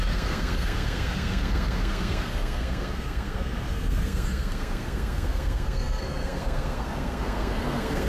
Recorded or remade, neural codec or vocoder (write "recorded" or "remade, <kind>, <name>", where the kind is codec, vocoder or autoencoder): remade, codec, SNAC